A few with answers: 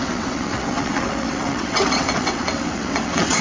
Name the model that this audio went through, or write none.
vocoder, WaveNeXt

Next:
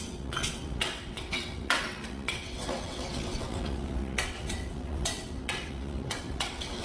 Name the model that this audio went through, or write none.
vocoder, WaveNeXt